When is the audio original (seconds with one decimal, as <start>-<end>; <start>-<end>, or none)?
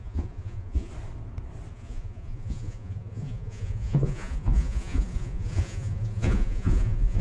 0.9-1.7